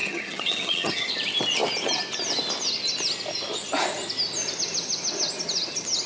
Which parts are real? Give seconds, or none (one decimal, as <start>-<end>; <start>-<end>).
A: 1.1-6.1